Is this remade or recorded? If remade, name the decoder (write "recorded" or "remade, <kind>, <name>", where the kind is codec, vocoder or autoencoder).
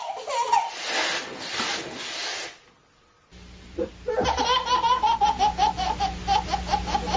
recorded